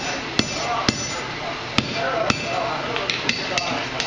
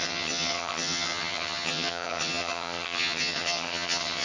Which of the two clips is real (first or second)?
first